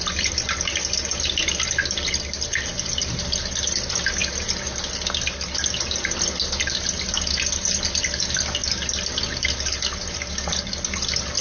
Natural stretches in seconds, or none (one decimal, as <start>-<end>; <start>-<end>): 0.0-11.4

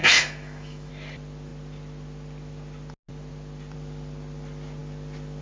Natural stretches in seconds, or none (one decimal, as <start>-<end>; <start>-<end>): 0.9-5.4

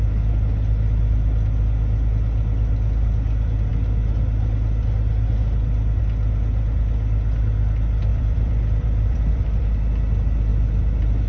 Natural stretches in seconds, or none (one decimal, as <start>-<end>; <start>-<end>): 0.0-8.1; 9.6-11.3

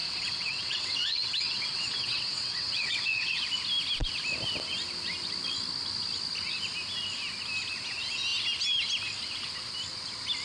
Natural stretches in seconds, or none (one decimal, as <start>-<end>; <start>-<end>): 3.4-10.4

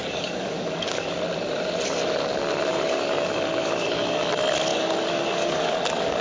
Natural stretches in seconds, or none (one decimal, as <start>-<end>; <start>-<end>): 1.1-2.7; 4.2-4.7

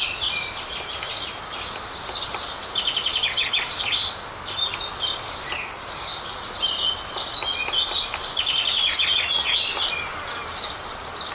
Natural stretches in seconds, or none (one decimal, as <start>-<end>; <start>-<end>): 0.0-11.3